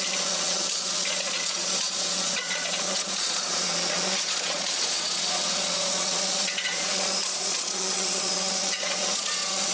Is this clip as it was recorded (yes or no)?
no